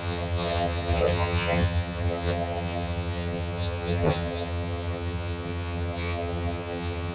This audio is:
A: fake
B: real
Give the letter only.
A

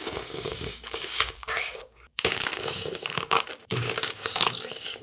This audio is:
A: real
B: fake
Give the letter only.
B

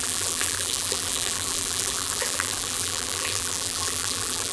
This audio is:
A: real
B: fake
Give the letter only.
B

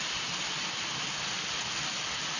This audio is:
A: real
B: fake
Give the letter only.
A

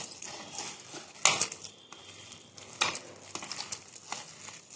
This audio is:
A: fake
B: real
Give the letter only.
B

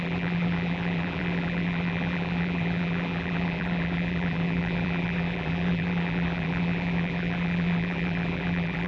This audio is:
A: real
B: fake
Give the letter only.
B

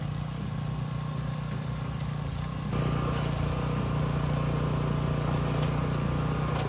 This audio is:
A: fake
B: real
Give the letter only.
B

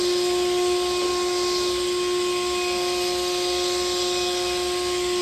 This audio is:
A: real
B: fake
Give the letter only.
A